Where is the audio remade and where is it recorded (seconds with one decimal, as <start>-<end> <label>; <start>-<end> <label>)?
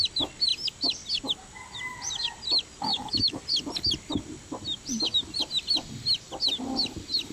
0.0-2.9 recorded; 2.9-3.4 remade; 3.4-7.3 recorded